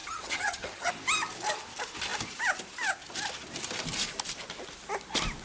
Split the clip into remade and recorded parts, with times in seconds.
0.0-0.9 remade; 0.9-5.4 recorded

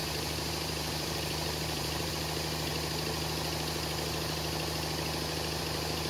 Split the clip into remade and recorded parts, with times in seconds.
0.0-2.1 remade; 2.1-6.1 recorded

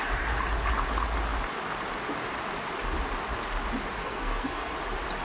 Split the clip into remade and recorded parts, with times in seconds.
0.0-4.0 recorded; 4.0-4.7 remade; 4.7-5.2 recorded

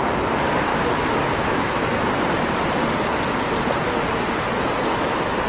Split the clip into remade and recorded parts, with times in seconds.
0.0-0.7 recorded; 0.7-2.1 remade; 2.1-5.5 recorded

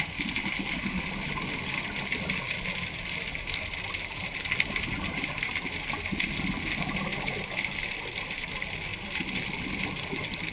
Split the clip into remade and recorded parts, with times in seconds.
0.0-10.5 recorded

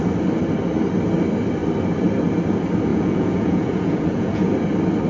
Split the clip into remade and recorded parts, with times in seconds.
0.0-2.9 recorded; 2.9-4.5 remade; 4.5-5.1 recorded

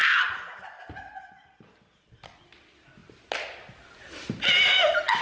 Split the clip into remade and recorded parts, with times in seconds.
0.0-5.2 recorded